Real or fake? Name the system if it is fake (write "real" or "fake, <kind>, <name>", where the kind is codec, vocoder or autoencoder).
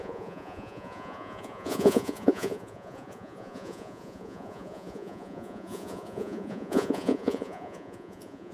fake, vocoder, Vocos